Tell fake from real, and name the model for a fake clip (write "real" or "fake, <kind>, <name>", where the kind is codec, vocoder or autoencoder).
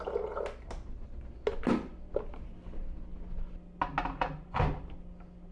real